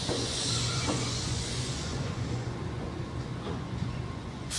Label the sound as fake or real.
fake